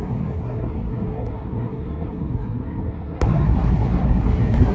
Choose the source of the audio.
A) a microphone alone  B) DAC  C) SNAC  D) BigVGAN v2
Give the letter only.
C